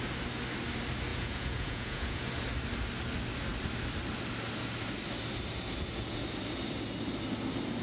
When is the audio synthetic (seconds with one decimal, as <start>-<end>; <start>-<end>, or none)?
1.1-2.3